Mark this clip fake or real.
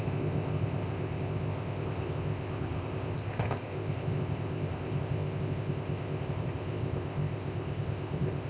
fake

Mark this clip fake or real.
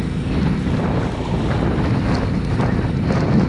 real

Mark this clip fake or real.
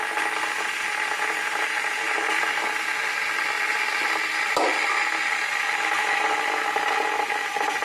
real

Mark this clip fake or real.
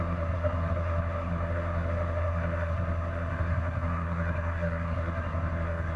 fake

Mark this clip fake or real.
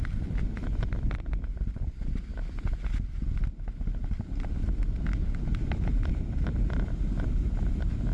real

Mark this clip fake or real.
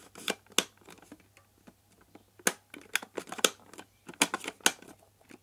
real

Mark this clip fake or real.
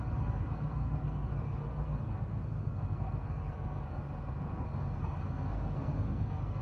fake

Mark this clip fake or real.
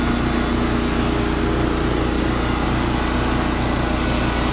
real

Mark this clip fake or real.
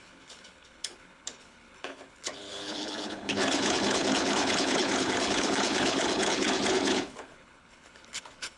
fake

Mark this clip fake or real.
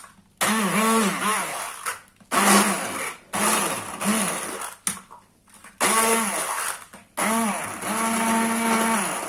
real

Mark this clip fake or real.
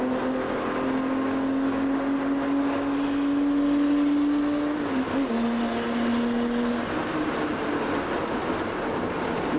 real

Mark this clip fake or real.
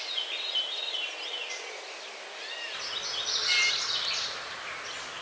real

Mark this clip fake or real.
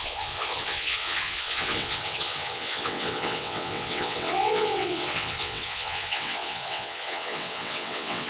fake